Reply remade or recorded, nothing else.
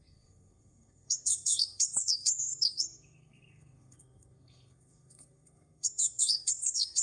remade